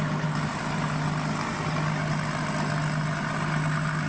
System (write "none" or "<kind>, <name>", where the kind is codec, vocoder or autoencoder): none